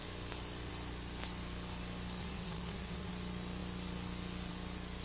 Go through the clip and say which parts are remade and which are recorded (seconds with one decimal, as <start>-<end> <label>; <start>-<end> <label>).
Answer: 0.0-2.2 recorded; 2.2-3.1 remade; 3.1-5.0 recorded